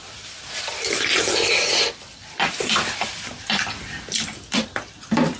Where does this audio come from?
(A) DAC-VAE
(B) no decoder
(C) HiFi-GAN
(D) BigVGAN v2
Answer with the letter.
D